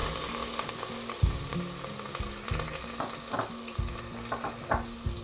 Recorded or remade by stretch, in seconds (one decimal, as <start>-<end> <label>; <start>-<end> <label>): 0.0-5.2 recorded